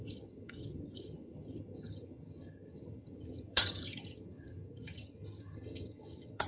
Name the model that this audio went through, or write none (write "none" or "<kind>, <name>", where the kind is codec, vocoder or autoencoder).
vocoder, HiFi-GAN